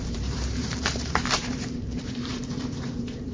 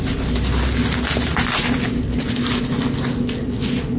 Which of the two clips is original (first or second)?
second